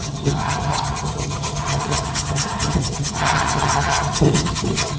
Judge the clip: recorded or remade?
remade